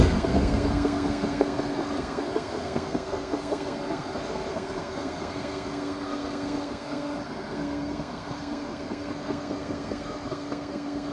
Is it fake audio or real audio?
fake